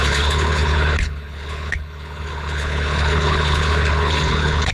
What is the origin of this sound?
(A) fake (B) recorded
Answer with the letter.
A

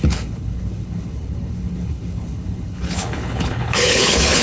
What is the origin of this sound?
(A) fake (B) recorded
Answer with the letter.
A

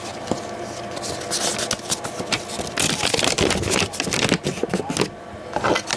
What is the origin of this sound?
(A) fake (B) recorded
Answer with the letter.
B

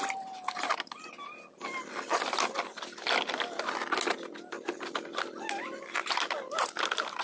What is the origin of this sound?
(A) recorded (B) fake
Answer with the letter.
A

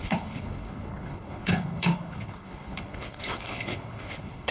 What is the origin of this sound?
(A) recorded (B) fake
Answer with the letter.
B